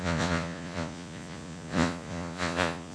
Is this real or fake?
fake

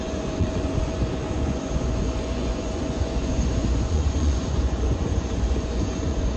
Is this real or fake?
fake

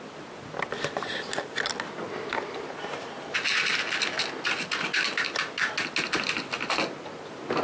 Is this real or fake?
real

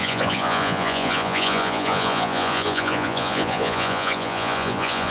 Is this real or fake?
fake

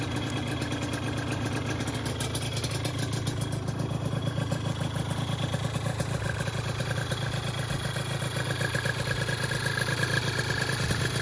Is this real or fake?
real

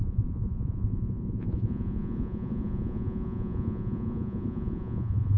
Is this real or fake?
fake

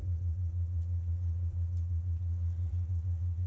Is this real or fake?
fake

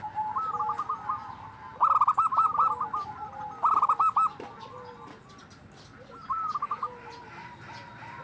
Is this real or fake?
real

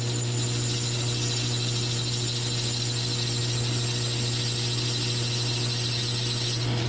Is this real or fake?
real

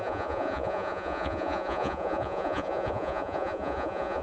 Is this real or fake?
fake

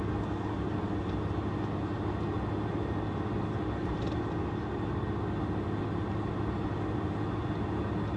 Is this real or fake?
real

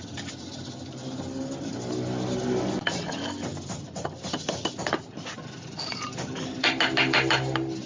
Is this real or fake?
real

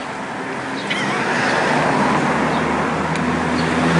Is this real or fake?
real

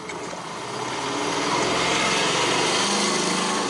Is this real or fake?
real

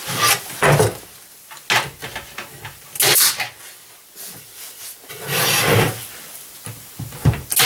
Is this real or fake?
real